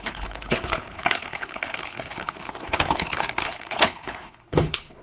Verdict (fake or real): fake